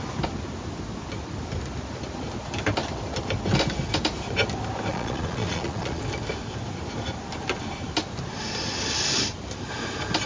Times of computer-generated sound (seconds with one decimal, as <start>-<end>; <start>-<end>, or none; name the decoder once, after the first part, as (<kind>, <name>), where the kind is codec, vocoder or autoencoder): 4.9-6.0 (vocoder, Vocos)